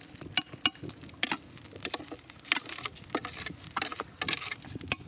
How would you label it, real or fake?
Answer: real